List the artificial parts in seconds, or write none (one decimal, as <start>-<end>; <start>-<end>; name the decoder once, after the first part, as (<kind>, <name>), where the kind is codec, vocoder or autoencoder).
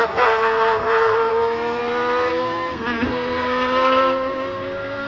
0.0-1.8 (codec, SNAC); 2.3-5.1